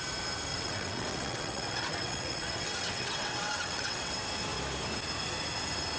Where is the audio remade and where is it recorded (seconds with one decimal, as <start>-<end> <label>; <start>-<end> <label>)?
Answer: 0.0-0.5 recorded; 0.5-4.1 remade; 4.1-6.0 recorded